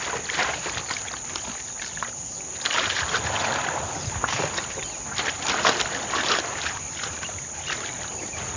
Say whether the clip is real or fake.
real